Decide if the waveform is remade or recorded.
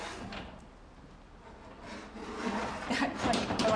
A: recorded